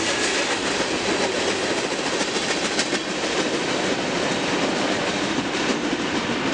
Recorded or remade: recorded